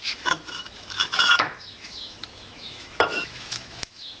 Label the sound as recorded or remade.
remade